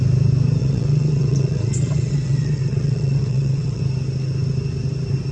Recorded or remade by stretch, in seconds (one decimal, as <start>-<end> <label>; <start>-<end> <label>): 0.0-0.6 recorded; 0.6-3.8 remade; 3.8-5.3 recorded